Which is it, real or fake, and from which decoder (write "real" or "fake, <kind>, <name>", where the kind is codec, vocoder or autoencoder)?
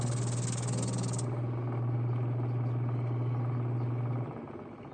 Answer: real